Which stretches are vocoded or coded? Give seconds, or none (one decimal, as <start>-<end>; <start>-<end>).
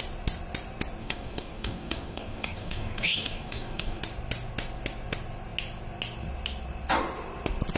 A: 1.0-4.0